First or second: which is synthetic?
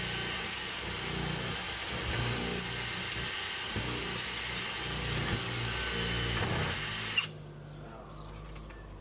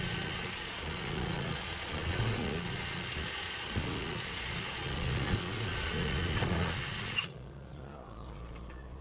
second